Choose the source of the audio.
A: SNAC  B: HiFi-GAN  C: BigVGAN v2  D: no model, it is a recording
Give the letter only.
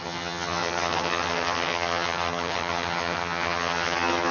B